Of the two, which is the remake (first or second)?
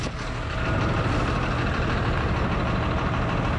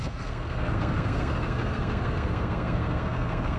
second